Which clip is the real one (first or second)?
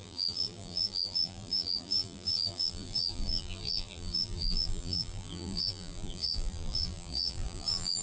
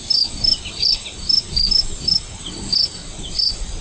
second